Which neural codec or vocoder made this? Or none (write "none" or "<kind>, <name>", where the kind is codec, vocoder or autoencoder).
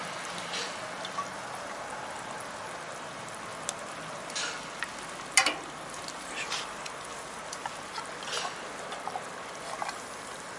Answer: none